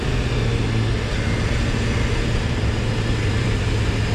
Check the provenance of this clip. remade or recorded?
recorded